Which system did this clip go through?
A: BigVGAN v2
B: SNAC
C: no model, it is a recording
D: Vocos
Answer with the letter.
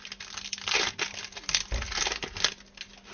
C